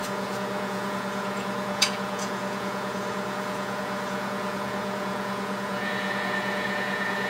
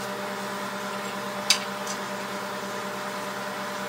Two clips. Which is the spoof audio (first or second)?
first